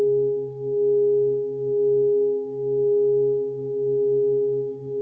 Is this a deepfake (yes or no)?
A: no